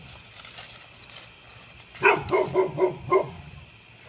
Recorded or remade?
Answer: recorded